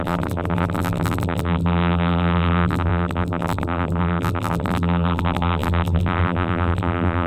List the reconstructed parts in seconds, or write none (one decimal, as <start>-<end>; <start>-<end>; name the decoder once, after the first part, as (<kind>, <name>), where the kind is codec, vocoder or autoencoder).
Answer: 0.0-7.3 (vocoder, BigVGAN v2)